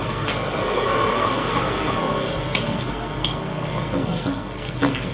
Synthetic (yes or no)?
yes